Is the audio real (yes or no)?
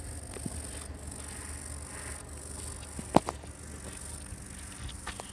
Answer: yes